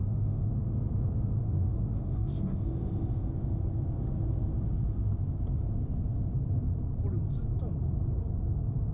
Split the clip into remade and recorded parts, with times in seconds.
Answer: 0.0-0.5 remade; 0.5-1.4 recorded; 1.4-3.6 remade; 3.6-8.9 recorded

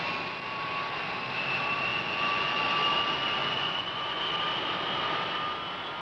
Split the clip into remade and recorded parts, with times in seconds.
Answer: 0.0-1.9 recorded; 1.9-2.7 remade; 2.7-3.4 recorded; 3.4-4.2 remade; 4.2-6.0 recorded